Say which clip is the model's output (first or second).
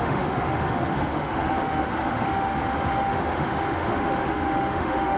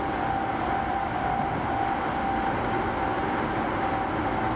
first